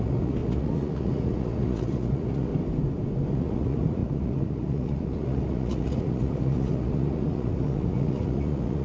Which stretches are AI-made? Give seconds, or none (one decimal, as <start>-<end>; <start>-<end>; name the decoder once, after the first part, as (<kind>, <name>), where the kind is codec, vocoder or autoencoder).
0.0-2.5 (vocoder, Vocos); 3.3-8.8